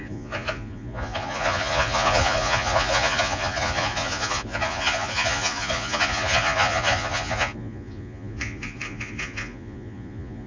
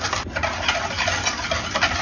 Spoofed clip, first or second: first